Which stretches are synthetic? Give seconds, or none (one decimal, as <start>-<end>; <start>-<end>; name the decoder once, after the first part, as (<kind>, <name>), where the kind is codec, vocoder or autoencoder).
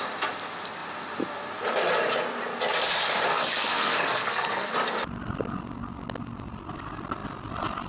3.3-4.7 (codec, SNAC)